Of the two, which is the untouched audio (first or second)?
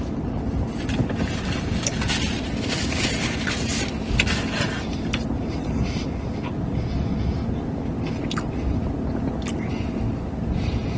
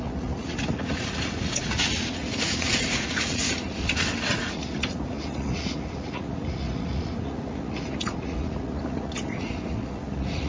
first